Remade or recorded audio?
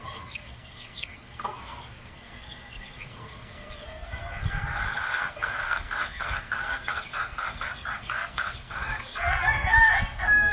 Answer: remade